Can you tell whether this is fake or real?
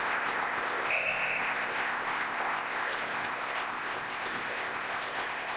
fake